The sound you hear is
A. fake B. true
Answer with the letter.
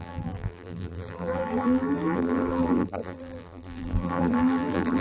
A